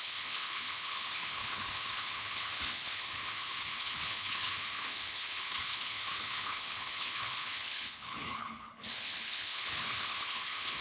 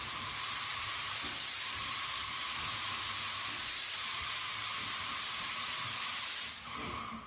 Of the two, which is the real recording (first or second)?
second